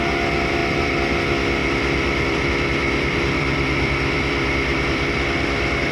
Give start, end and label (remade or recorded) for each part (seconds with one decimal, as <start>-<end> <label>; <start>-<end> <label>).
0.0-0.6 recorded; 0.6-1.2 remade; 1.2-1.6 recorded; 1.6-5.1 remade; 5.1-5.9 recorded